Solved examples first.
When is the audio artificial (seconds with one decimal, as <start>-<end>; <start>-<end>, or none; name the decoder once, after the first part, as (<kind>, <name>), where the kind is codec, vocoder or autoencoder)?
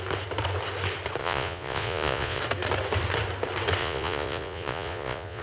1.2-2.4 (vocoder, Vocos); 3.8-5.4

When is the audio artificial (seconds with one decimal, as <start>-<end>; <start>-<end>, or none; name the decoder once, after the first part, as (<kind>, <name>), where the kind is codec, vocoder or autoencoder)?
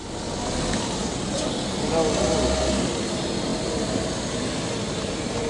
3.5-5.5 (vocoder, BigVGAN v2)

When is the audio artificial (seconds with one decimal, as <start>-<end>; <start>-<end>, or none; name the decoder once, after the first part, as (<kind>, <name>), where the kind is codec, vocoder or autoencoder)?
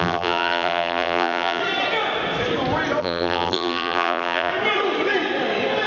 0.0-1.6 (vocoder, BigVGAN v2); 3.0-4.5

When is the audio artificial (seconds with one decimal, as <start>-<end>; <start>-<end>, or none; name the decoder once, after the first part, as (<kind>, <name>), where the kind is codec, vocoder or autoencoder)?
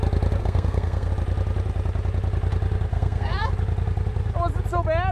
0.4-1.1 (codec, SNAC); 2.9-3.5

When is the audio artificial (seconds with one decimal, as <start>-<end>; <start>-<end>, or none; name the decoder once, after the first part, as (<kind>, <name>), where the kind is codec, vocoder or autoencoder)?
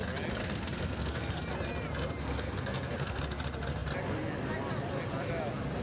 0.4-1.4 (codec, SNAC); 2.2-3.2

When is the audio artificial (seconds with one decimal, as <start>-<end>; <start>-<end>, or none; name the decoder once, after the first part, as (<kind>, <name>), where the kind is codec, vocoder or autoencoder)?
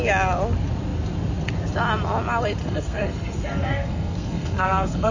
2.6-5.1 (codec, SNAC)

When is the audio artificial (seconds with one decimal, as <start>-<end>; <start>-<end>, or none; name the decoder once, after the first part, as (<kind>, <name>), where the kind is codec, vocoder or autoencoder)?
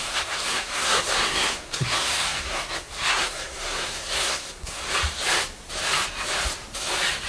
0.0-4.8 (codec, SNAC)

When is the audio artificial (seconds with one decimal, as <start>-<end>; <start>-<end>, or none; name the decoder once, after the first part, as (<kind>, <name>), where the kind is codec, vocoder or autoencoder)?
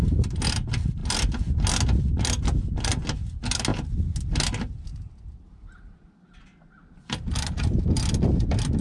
none